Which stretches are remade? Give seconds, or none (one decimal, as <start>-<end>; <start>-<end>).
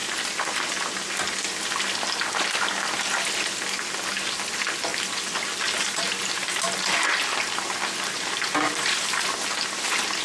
none